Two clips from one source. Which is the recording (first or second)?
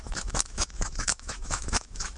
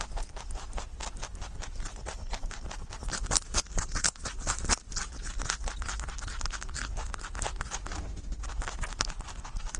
second